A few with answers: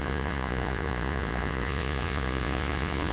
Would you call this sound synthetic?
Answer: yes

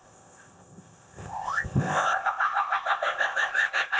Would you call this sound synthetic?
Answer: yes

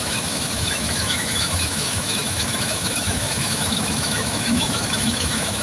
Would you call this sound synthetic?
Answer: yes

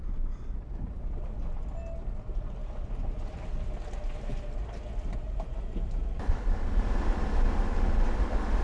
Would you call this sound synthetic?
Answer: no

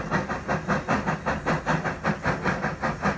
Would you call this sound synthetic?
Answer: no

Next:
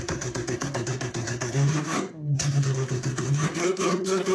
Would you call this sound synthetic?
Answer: yes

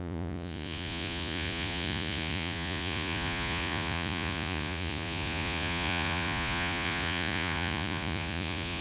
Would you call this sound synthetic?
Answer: yes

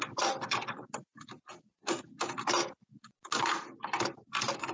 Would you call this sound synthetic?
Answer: no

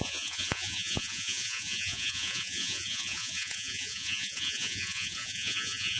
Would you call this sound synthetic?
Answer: yes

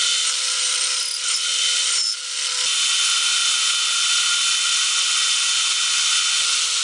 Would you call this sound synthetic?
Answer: no